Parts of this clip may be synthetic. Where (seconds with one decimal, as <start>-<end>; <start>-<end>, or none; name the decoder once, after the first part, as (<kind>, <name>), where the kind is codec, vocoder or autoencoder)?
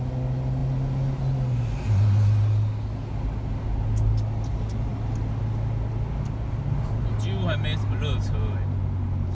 none